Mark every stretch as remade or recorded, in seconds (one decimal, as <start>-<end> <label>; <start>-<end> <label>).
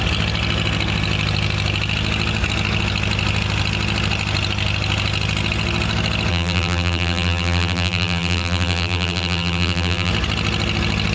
0.0-6.3 recorded; 6.3-10.1 remade; 10.1-11.1 recorded